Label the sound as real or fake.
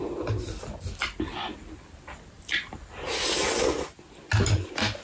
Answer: real